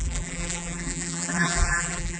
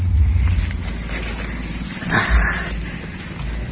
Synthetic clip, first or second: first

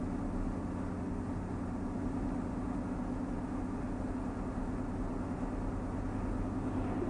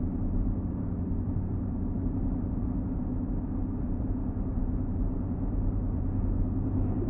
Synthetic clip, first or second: second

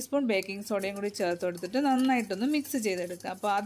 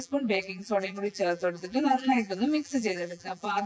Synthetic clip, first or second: second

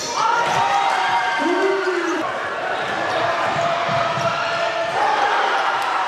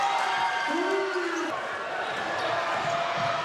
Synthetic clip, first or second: first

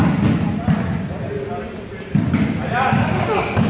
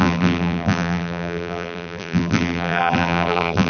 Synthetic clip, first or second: second